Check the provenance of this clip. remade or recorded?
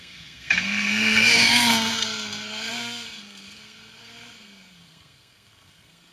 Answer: remade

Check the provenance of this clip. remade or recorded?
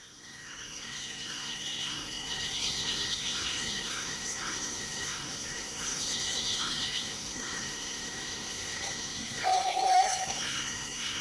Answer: remade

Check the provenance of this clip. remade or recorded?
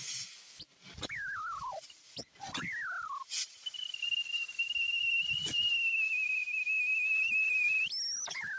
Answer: recorded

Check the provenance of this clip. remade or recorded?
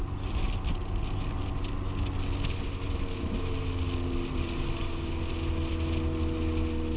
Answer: recorded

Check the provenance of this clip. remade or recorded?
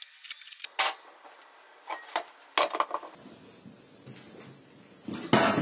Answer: recorded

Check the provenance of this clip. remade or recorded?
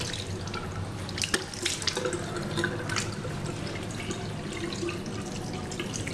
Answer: recorded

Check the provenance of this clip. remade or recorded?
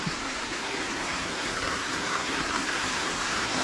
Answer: remade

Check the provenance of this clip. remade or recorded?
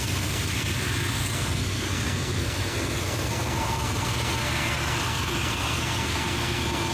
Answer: remade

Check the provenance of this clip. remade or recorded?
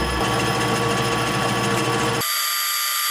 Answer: recorded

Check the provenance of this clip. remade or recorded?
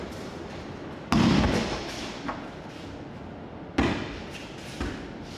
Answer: recorded